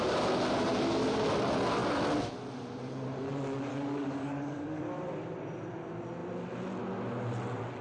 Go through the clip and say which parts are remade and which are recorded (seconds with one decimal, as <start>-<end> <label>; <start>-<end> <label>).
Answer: 0.0-3.7 recorded; 3.7-4.8 remade; 4.8-7.8 recorded